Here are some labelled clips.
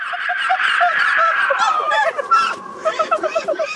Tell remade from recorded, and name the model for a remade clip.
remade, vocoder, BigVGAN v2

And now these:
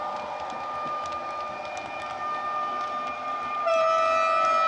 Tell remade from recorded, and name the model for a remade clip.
recorded